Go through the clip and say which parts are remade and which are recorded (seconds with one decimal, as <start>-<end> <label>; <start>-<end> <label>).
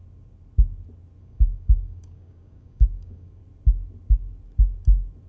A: 0.0-1.2 recorded; 1.2-3.4 remade; 3.4-5.3 recorded